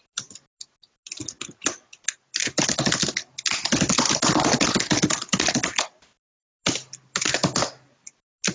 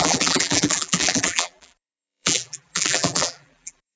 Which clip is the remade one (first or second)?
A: second